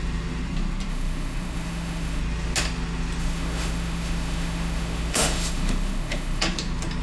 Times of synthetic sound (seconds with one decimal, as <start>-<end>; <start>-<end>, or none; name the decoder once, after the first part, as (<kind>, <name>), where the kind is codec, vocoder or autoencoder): 0.9-2.2 (autoencoder, DAC-VAE); 3.2-6.4